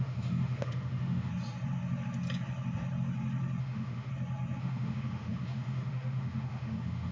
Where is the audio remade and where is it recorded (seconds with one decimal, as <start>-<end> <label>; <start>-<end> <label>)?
0.0-1.3 remade; 1.3-3.6 recorded; 3.6-4.1 remade; 4.1-4.6 recorded; 4.6-7.1 remade